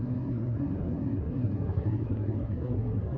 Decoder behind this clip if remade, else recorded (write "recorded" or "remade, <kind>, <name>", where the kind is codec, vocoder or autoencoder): remade, codec, SNAC